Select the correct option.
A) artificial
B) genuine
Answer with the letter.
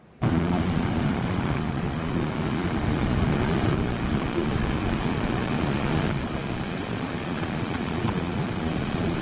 A